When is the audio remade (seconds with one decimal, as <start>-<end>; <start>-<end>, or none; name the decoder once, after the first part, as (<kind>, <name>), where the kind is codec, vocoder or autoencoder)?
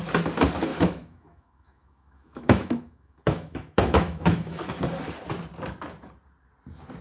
0.7-4.6 (autoencoder, DAC-VAE)